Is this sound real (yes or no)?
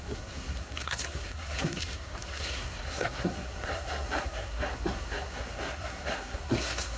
no